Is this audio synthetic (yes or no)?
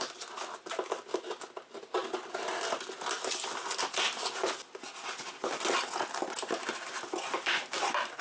no